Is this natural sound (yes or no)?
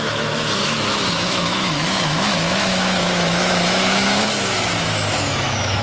no